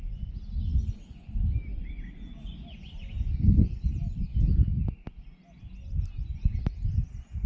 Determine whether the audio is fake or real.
real